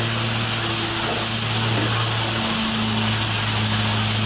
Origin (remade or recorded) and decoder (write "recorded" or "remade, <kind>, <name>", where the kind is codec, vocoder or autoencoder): recorded